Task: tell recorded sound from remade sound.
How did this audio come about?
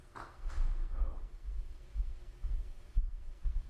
remade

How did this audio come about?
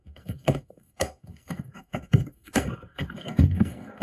remade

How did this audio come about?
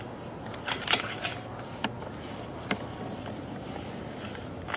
recorded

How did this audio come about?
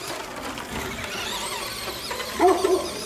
recorded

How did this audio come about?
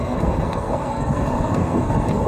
remade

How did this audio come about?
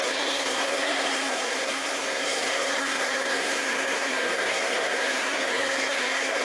remade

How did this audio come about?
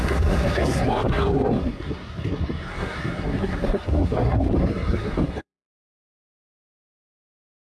remade